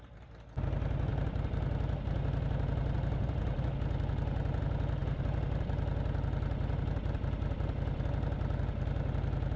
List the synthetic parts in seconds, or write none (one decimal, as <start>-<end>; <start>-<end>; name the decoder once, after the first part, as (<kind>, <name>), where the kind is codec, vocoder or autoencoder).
none